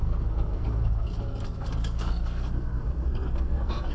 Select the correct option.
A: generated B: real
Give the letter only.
A